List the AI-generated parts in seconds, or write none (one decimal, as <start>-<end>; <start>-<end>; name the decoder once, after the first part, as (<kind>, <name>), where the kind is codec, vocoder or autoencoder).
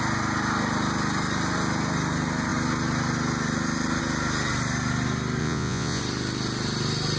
5.4-6.0 (vocoder, Vocos)